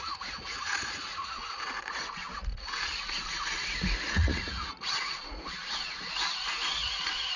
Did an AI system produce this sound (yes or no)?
yes